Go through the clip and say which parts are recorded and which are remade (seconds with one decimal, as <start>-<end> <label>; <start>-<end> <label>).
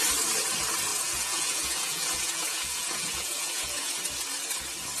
0.0-0.9 recorded; 0.9-3.9 remade; 3.9-5.0 recorded